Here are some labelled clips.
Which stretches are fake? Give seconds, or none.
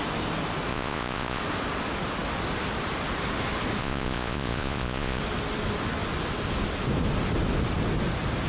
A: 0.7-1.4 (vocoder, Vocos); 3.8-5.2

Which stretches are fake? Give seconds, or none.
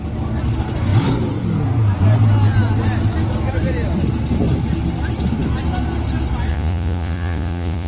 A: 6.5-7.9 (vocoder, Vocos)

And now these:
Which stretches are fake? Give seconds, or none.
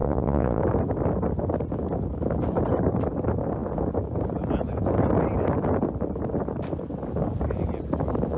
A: 0.0-0.6 (vocoder, Vocos)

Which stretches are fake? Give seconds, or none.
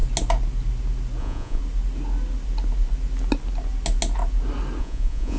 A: 1.2-1.6 (vocoder, Vocos); 4.8-5.4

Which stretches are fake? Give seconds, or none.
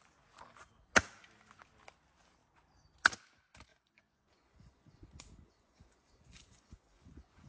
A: 3.7-7.5 (vocoder, Vocos)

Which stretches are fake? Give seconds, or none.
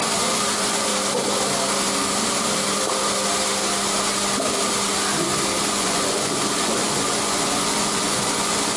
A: 0.0-0.9 (vocoder, Vocos); 5.6-8.8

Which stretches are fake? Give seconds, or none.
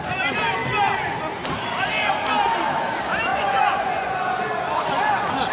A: 3.3-4.4 (vocoder, Vocos)